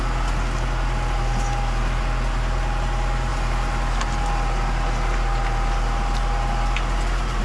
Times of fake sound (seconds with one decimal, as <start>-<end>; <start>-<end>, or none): none